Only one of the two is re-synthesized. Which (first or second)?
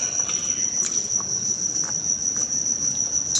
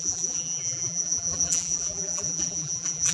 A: second